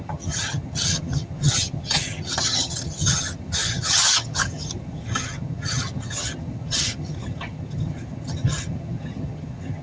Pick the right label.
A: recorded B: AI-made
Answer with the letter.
B